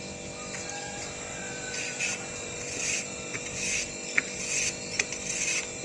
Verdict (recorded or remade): recorded